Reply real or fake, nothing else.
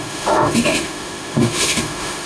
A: fake